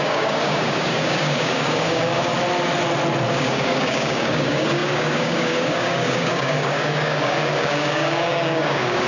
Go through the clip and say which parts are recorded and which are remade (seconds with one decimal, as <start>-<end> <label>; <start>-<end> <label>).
0.0-2.3 remade; 2.3-3.3 recorded; 3.3-9.1 remade